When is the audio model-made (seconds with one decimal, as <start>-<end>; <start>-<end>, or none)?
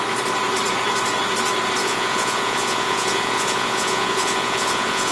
1.8-5.1